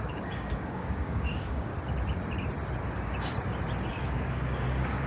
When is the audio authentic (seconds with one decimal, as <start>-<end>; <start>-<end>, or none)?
1.7-3.9